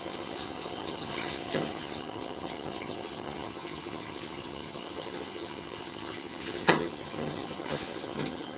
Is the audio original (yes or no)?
no